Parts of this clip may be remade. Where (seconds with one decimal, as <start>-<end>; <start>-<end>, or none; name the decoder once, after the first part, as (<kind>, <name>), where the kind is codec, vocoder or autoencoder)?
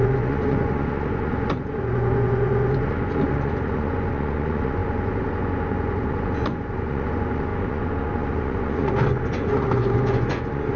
0.0-10.8 (vocoder, Vocos)